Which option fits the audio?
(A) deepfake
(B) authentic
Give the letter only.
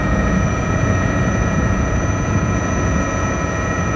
A